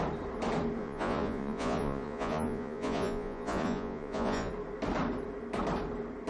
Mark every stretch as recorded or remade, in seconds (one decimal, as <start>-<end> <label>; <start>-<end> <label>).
0.0-0.8 recorded; 0.8-4.5 remade; 4.5-6.3 recorded